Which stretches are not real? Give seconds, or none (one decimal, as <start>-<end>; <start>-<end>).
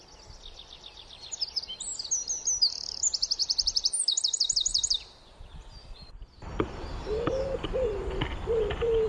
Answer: 3.4-4.0; 4.7-9.1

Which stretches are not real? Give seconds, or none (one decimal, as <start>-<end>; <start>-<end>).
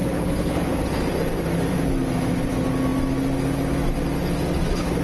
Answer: 0.0-0.6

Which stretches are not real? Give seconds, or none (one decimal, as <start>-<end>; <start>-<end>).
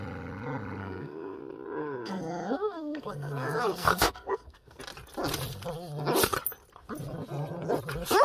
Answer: 0.8-1.4; 1.8-4.8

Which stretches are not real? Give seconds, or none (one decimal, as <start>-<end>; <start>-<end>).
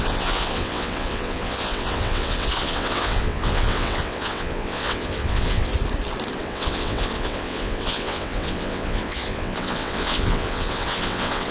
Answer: 0.0-5.7; 6.4-11.5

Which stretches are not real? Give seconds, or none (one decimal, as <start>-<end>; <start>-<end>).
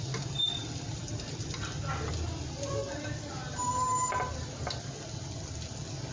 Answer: 0.0-1.8